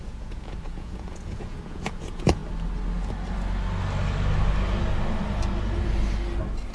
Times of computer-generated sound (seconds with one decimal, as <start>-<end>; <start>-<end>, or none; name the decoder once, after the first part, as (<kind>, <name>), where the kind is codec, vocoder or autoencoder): 0.0-2.4 (vocoder, Vocos)